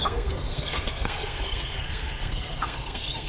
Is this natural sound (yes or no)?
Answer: no